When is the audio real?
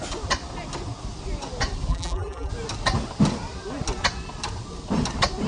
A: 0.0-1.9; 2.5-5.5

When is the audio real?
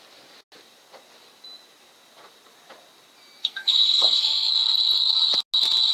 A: 0.0-3.4; 4.5-5.9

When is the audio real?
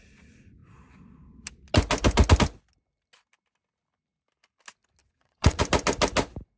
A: 0.0-5.0; 5.6-6.6